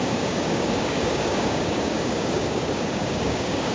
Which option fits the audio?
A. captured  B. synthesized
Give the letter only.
B